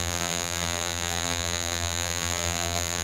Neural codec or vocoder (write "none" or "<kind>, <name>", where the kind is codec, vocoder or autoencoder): vocoder, BigVGAN v2